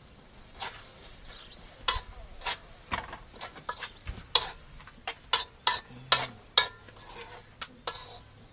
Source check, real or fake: real